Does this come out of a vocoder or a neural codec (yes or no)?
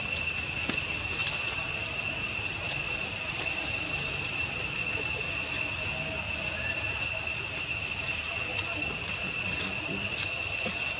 no